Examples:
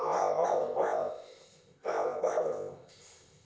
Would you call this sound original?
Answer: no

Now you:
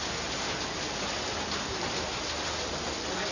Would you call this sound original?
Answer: yes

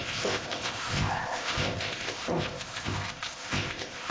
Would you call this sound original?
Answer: no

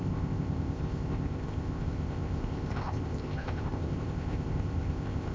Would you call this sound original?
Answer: no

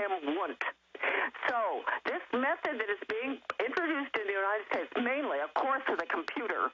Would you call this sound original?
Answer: yes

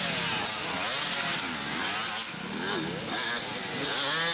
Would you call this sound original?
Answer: yes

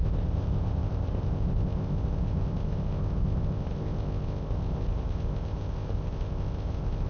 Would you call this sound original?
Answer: no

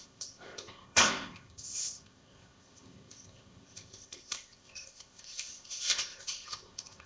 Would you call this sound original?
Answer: no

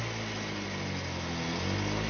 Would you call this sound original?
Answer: yes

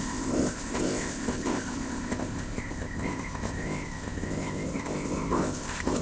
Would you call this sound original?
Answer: no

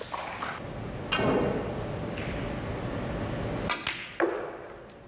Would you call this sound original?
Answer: yes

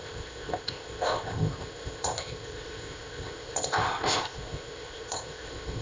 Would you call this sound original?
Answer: no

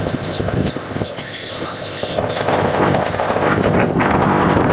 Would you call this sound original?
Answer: no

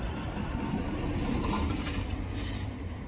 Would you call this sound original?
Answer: yes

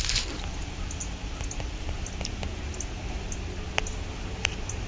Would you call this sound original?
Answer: yes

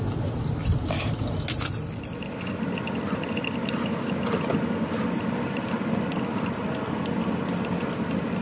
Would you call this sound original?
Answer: yes